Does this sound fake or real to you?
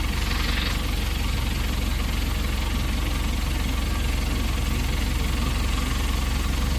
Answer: real